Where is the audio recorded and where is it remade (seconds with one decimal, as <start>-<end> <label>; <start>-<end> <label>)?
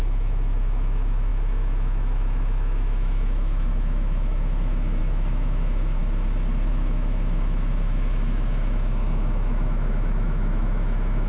0.0-6.0 remade; 6.0-6.7 recorded; 6.7-11.3 remade